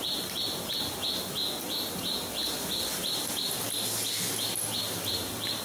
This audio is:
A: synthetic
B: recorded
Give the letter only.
B